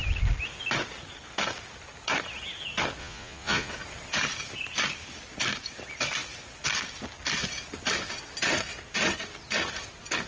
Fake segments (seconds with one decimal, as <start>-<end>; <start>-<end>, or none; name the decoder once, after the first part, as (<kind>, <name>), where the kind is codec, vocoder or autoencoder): 3.0-3.7 (vocoder, Vocos)